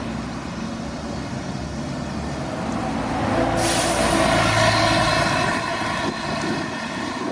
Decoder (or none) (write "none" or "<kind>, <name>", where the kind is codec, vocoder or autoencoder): none